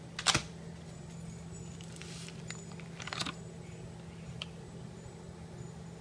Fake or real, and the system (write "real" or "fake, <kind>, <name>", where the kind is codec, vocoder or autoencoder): real